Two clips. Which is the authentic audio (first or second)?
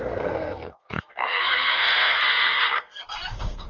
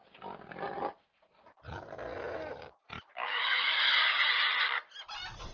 second